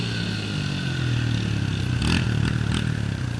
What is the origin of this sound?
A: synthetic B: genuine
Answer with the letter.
B